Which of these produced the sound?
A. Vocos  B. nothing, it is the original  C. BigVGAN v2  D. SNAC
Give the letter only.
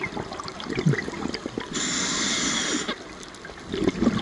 B